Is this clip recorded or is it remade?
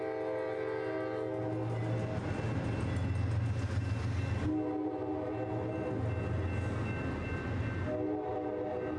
recorded